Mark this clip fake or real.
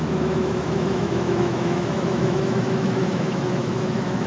fake